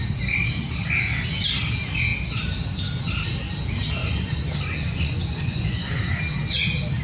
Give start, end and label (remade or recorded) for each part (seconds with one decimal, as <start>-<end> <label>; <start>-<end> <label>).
0.0-4.0 recorded; 4.0-6.2 remade; 6.2-7.0 recorded